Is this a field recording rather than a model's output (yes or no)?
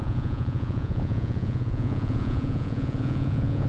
no